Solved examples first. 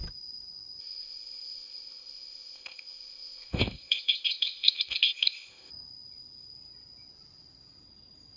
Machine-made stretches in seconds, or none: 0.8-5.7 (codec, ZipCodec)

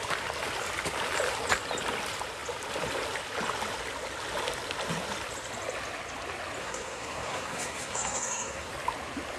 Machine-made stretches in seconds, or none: 6.6-8.7 (codec, SNAC)

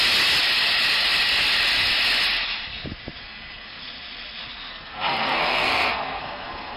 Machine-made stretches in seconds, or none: 3.2-3.8 (codec, SNAC); 4.7-6.8